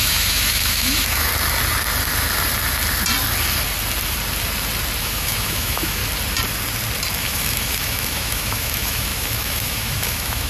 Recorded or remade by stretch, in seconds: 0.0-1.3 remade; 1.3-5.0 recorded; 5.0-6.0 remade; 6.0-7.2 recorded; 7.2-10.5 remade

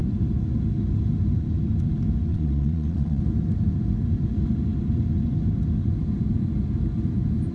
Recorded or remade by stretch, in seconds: 0.0-2.3 recorded; 2.3-3.2 remade; 3.2-7.5 recorded

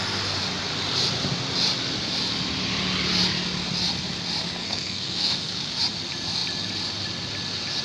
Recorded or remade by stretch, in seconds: 0.0-4.6 recorded; 4.6-5.8 remade; 5.8-7.8 recorded

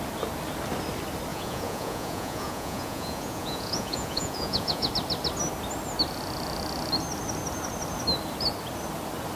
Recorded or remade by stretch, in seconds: 0.0-1.3 recorded; 1.3-4.9 remade; 4.9-9.4 recorded